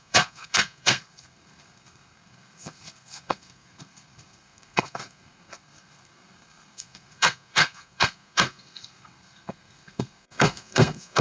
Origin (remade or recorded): remade